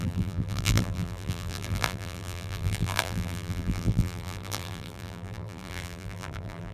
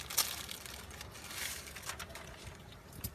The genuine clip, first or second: second